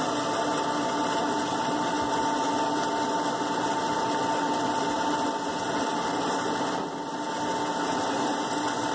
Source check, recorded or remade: recorded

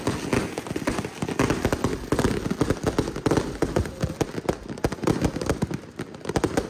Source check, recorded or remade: recorded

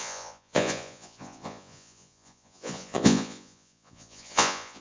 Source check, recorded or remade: remade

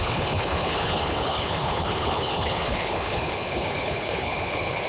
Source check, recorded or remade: remade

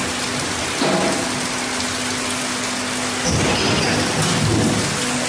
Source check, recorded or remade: recorded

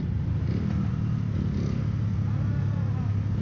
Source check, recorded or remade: recorded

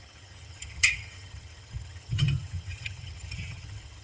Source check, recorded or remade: remade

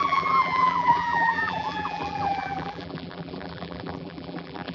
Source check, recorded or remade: remade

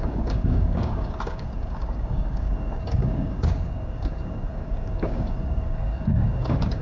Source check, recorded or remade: remade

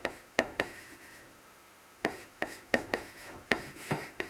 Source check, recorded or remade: remade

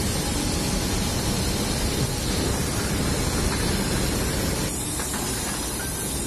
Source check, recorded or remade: recorded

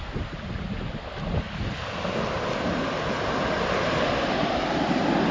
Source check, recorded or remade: recorded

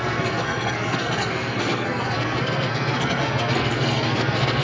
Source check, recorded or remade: remade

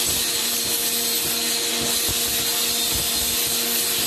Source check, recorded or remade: recorded